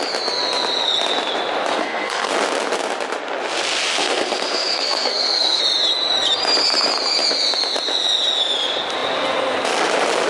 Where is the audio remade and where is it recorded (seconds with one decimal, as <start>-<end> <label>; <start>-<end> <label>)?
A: 0.0-1.7 recorded; 1.7-2.3 remade; 2.3-4.0 recorded; 4.0-5.6 remade; 5.6-10.3 recorded